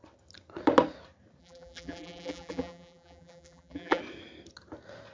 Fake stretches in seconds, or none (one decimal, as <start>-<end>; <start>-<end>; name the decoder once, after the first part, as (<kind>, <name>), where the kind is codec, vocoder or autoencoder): 1.4-4.0 (vocoder, BigVGAN v2)